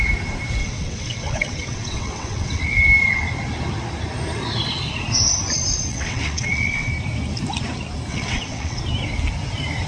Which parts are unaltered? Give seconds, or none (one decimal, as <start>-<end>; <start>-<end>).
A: 0.0-0.6; 2.6-5.9; 6.9-8.1; 8.8-9.9